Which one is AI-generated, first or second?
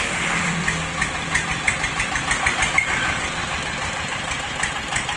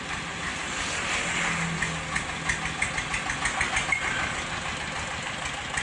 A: first